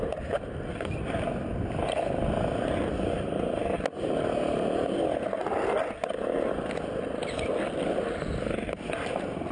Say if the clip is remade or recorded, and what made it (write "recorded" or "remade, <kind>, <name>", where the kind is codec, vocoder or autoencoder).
recorded